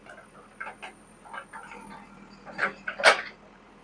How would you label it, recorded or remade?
recorded